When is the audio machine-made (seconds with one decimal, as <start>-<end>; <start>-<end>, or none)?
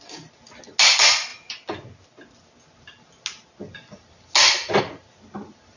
none